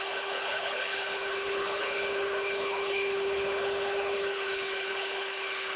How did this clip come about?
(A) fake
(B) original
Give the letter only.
A